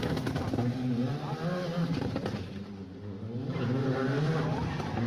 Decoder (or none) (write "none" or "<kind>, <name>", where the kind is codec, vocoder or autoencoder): vocoder, BigVGAN v2